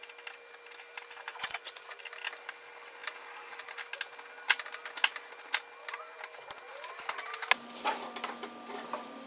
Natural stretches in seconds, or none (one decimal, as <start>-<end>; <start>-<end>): 0.0-1.3; 2.0-9.3